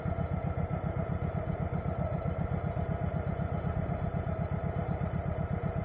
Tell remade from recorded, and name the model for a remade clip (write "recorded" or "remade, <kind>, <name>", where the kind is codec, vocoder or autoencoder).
recorded